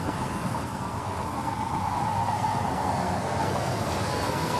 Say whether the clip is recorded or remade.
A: remade